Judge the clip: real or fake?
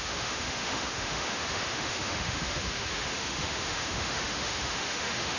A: fake